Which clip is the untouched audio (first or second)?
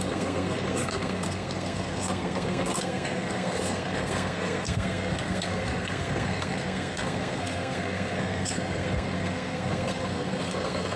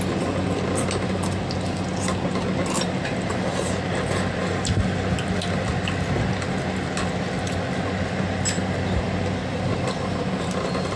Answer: second